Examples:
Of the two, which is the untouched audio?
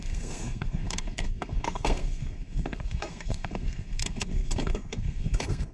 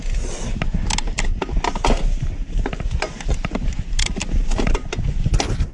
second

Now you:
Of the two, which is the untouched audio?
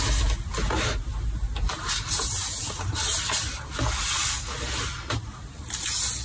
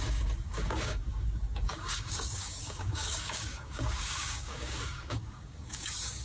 first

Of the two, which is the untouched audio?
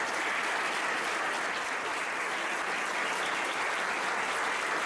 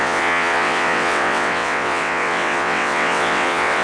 first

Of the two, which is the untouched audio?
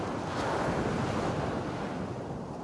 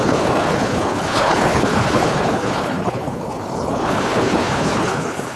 first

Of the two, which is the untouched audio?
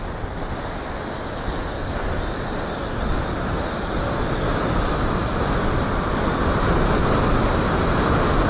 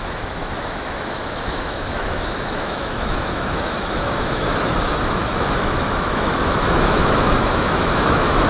first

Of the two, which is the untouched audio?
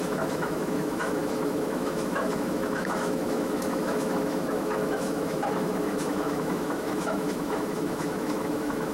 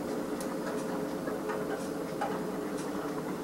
second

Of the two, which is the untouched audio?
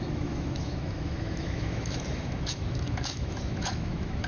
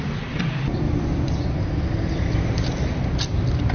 second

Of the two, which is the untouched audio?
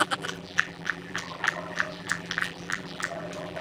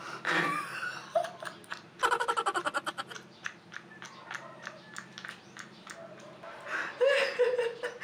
second